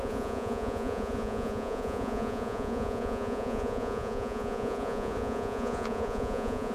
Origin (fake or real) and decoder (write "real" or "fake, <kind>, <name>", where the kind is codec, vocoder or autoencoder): fake, vocoder, Vocos